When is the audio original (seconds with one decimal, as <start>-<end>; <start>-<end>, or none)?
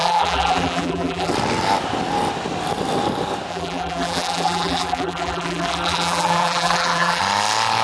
1.3-3.5; 7.2-7.8